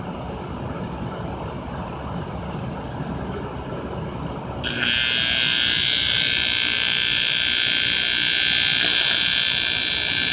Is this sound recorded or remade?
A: recorded